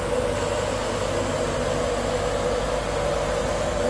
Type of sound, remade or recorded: recorded